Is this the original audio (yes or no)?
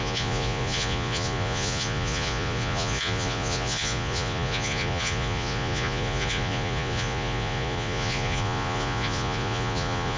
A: no